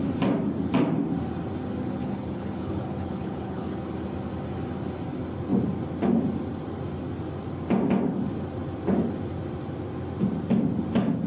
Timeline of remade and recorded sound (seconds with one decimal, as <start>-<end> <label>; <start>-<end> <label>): 0.0-2.0 recorded; 2.0-3.8 remade; 3.8-11.3 recorded